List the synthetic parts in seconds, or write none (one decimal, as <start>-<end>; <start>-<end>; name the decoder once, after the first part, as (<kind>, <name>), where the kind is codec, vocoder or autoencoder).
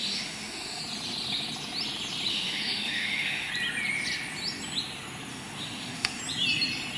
0.0-0.8 (autoencoder, DAC-VAE); 2.3-3.5; 5.3-6.2